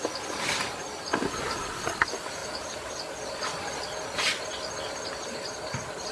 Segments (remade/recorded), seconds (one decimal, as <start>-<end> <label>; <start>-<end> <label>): 0.0-6.1 recorded